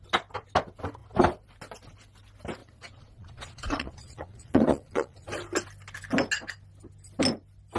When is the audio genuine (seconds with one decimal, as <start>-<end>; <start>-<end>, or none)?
0.0-2.6; 5.3-7.8